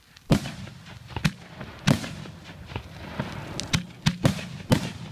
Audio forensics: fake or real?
real